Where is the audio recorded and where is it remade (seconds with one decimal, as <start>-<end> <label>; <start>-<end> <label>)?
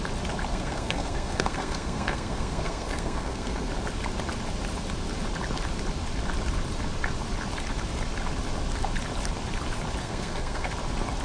0.0-0.5 recorded; 0.5-3.7 remade; 3.7-10.0 recorded; 10.0-10.7 remade; 10.7-11.2 recorded